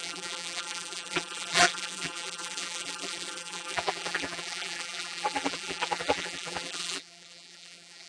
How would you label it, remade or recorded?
remade